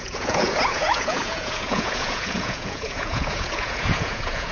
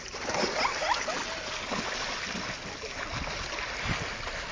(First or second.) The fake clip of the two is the first